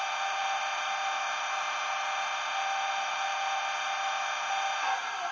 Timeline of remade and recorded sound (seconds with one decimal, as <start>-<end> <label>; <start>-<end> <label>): 0.0-5.3 recorded